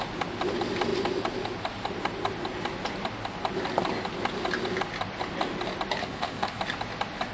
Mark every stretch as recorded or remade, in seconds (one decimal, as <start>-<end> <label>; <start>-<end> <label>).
0.0-6.0 recorded; 6.0-6.6 remade; 6.6-7.3 recorded